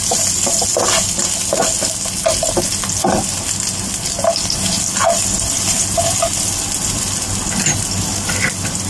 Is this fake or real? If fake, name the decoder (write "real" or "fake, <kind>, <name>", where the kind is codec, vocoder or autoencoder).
real